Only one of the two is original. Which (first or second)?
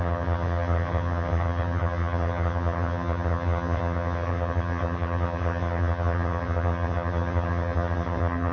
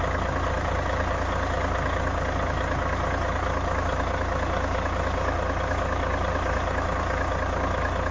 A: second